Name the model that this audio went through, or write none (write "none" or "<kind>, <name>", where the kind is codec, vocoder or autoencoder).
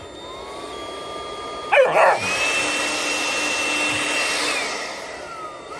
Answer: none